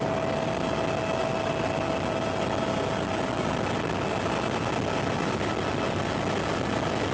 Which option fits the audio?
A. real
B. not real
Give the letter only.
A